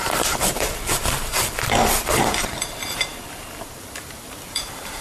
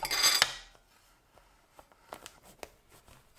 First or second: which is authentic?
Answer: second